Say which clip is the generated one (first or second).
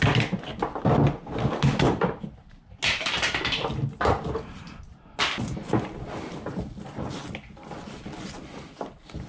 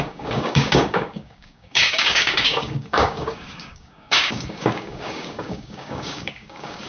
second